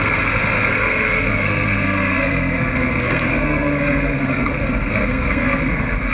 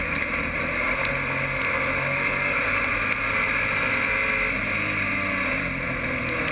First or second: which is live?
second